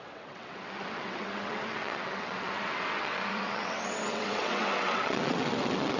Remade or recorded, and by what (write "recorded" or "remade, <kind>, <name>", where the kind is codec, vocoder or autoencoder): remade, vocoder, WaveNeXt